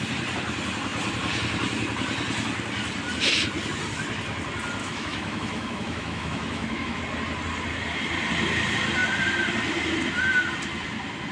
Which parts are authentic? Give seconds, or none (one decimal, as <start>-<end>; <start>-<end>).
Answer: 0.0-4.8; 7.0-11.3